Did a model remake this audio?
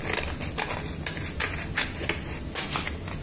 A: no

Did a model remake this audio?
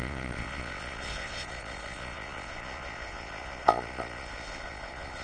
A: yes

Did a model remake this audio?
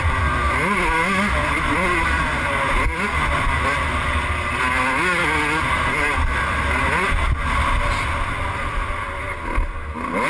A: no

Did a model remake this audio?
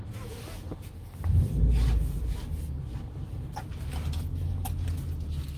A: no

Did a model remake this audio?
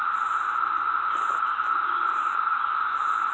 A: no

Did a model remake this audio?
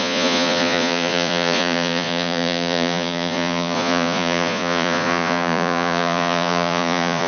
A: yes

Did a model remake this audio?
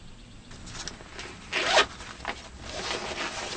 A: no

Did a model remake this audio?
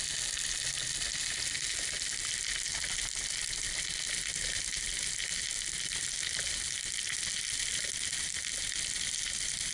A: no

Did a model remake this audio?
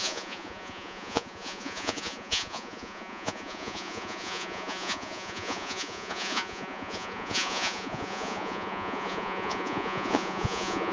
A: yes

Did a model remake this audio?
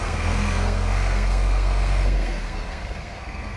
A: yes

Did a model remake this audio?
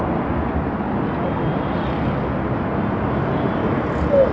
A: no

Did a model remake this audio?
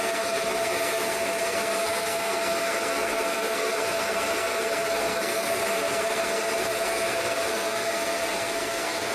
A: yes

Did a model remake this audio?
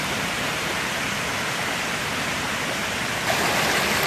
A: no